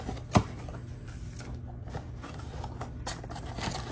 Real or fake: real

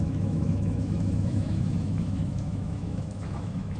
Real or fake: fake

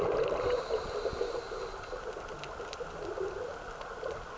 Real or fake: real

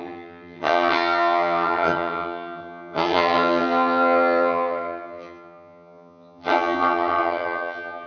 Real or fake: fake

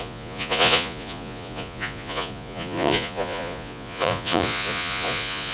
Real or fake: fake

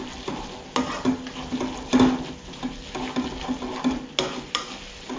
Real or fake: real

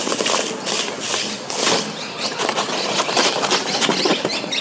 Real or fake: real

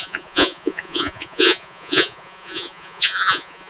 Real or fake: fake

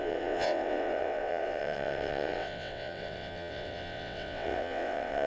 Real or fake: fake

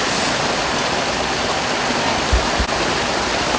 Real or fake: real